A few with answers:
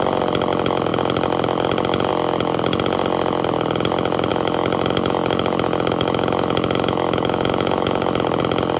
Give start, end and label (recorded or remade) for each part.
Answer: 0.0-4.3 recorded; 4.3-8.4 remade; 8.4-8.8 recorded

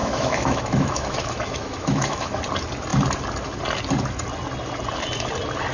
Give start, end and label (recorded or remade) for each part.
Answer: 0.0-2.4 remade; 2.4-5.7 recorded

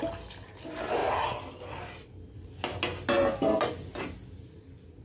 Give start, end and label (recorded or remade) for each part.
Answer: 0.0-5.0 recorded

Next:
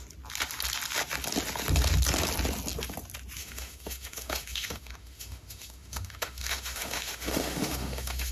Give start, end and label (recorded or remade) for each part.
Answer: 0.0-3.4 recorded; 3.4-8.3 remade

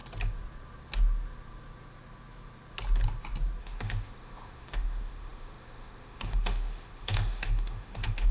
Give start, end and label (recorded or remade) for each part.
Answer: 0.0-3.6 recorded; 3.6-8.3 remade

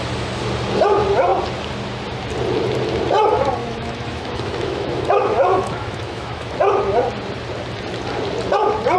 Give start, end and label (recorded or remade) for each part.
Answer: 0.0-3.6 recorded; 3.6-6.5 remade; 6.5-9.0 recorded